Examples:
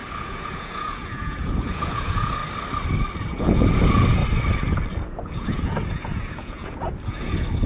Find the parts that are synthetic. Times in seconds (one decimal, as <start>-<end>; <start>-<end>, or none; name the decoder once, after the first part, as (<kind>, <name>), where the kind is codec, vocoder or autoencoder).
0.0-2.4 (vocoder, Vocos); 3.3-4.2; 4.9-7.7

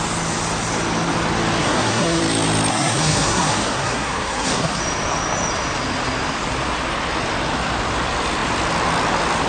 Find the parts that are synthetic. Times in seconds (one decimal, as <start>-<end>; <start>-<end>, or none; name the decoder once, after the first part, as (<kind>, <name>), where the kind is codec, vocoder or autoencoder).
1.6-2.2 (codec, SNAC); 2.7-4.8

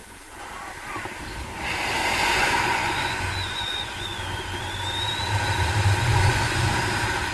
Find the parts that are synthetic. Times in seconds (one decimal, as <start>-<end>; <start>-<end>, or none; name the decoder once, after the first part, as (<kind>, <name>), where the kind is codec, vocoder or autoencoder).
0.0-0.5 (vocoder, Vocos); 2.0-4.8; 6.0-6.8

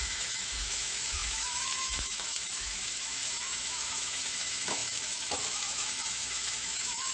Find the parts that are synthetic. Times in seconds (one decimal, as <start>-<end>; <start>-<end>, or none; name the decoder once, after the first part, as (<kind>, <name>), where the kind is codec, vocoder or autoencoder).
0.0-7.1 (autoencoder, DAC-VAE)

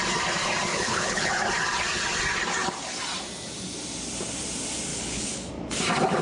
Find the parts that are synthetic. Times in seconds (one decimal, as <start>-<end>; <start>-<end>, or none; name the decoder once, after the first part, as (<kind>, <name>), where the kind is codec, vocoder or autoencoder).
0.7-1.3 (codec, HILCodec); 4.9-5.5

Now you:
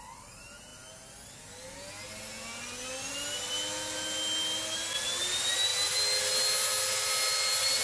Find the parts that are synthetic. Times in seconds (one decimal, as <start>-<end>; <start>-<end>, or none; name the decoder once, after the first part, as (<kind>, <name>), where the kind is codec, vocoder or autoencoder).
none

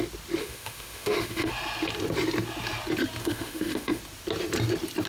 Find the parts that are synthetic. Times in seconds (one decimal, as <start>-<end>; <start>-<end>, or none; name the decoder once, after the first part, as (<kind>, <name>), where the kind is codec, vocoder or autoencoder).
0.4-1.5 (autoencoder, DAC-VAE); 3.2-4.0